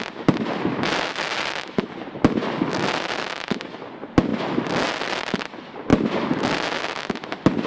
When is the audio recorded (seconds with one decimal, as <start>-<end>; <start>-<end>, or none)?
0.0-7.7